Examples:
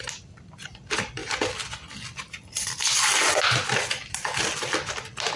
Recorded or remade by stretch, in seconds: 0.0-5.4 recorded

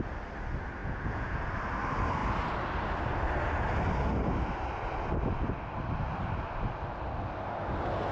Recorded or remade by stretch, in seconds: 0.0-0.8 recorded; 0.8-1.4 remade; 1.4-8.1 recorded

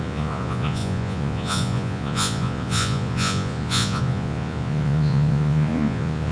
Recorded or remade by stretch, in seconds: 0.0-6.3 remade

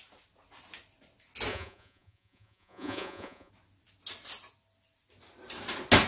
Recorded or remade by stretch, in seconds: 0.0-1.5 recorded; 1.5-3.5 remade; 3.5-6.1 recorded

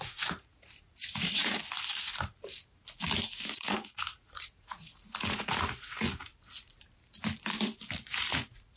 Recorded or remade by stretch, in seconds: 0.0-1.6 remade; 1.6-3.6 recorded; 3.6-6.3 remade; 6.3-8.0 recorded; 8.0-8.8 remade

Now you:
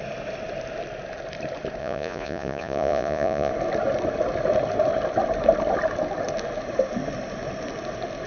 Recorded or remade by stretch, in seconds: 0.0-1.8 recorded; 1.8-3.5 remade; 3.5-8.3 recorded

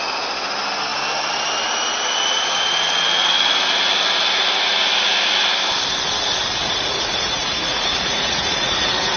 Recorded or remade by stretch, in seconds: 0.0-6.6 recorded; 6.6-9.2 remade

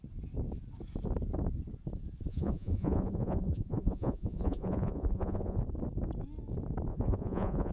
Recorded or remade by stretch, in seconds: 0.0-2.3 recorded; 2.3-5.6 remade; 5.6-6.9 recorded; 6.9-7.7 remade